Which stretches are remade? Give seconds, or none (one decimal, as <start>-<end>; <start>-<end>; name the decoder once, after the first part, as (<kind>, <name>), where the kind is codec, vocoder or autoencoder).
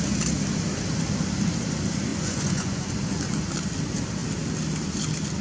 2.1-2.9 (vocoder, Vocos)